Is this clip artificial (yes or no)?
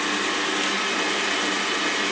no